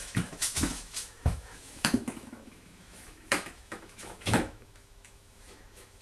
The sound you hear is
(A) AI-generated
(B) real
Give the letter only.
A